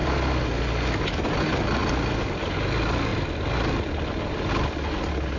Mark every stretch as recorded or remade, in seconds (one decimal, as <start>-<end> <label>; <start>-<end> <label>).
0.0-5.4 recorded